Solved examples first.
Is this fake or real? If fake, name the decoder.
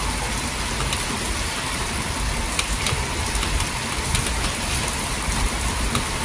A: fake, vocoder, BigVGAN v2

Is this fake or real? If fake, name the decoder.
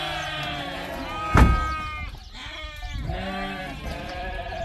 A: real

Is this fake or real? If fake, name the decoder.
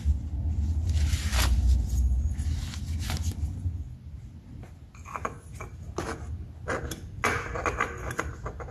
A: real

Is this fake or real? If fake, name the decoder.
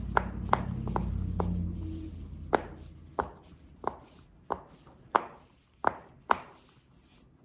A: real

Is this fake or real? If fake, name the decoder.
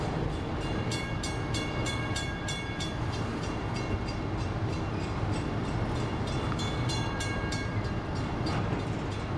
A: real